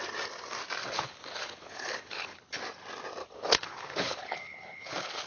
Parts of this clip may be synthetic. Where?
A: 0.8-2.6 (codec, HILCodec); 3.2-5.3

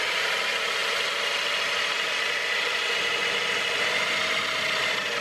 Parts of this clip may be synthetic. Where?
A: none

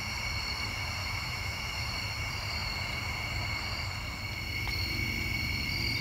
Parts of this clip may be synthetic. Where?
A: 1.0-1.9 (autoencoder, DAC-VAE)

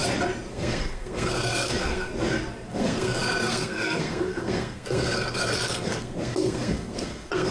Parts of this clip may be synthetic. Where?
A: 0.5-2.1 (codec, SNAC); 2.7-7.5

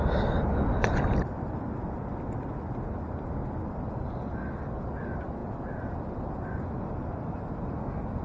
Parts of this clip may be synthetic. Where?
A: none

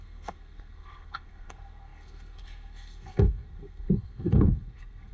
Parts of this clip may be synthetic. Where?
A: 0.0-5.1 (codec, SNAC)

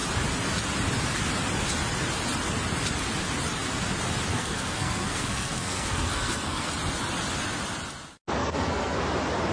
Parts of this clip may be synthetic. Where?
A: 4.3-6.7 (codec, SNAC); 8.4-9.0